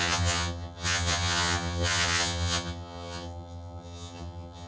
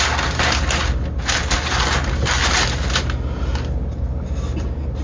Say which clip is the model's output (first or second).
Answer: first